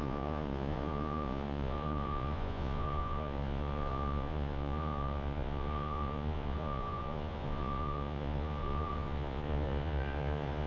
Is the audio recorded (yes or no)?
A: no